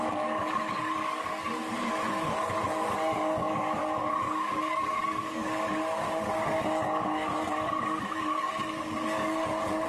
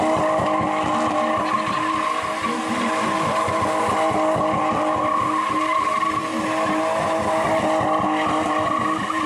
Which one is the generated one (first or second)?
first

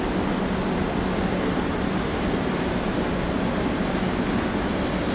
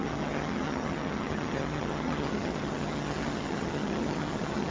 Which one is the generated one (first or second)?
second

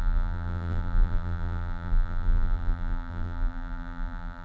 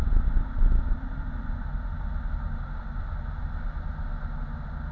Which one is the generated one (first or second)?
first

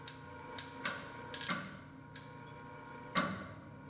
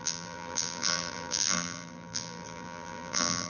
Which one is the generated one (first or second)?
second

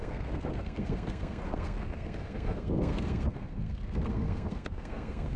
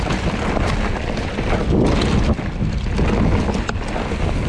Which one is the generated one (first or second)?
first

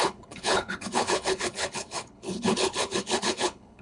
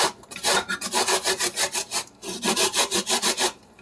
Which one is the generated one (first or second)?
first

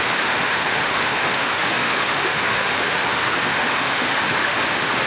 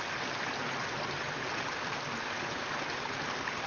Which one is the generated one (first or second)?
first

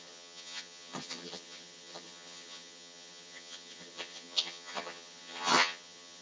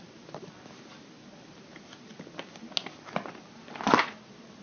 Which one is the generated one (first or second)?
first